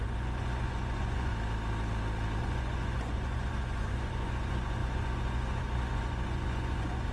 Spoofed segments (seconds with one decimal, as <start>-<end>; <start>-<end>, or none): 0.0-1.3; 2.4-7.1